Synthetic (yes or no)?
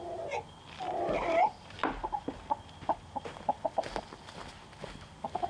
no